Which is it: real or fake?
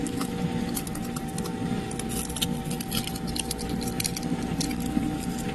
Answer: real